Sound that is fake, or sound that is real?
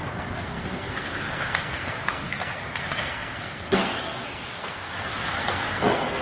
fake